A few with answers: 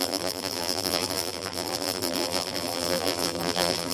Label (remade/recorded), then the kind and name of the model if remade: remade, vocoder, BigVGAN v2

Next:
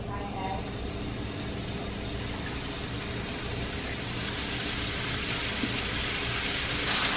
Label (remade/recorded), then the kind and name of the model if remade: remade, vocoder, BigVGAN v2